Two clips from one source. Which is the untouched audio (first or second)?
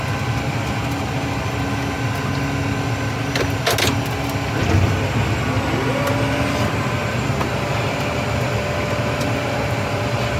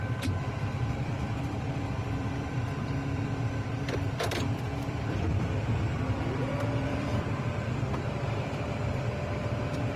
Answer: first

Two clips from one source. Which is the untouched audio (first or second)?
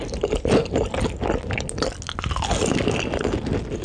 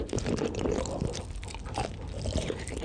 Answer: first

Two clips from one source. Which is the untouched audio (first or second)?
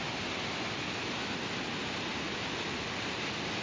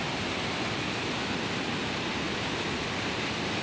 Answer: first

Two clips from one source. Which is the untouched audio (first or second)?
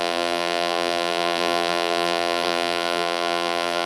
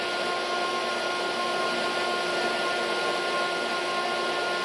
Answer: second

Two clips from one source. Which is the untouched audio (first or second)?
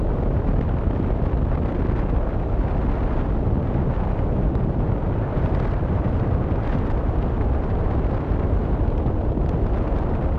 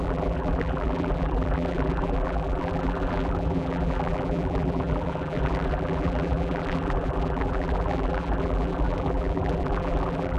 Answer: first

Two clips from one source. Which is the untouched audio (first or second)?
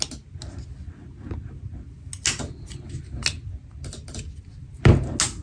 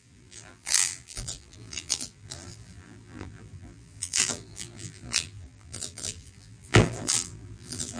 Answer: first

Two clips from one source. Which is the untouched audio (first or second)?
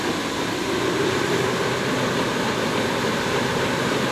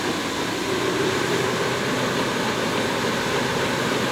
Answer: second